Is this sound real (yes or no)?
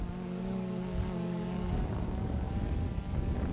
no